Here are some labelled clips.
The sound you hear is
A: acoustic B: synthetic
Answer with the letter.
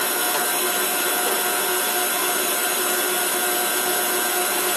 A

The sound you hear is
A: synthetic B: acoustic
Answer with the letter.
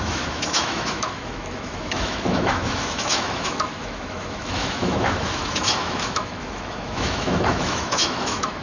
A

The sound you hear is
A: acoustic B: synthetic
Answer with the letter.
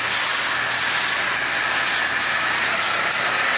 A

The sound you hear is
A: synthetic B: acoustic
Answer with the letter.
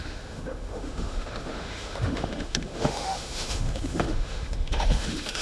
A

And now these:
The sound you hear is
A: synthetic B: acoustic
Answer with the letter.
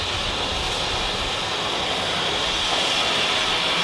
B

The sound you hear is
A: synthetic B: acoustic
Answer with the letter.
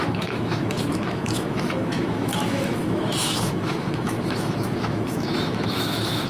A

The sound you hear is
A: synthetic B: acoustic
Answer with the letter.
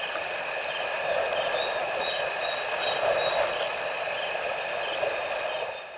B